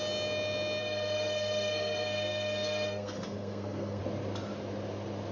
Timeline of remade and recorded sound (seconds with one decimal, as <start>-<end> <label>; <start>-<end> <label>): 0.0-0.8 recorded; 0.8-4.0 remade; 4.0-5.3 recorded